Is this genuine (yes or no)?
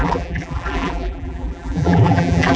no